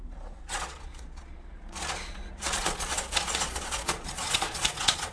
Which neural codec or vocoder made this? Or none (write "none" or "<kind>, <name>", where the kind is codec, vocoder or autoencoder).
vocoder, Vocos